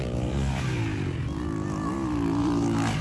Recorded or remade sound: recorded